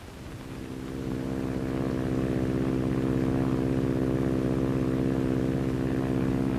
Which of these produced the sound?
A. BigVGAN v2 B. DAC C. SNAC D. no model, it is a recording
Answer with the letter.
D